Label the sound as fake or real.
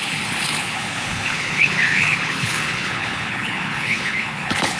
fake